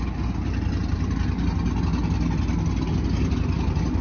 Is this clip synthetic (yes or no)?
no